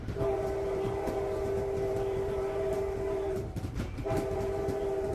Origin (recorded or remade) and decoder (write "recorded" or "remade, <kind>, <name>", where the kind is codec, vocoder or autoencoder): remade, vocoder, BigVGAN v2